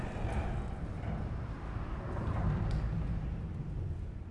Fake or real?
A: real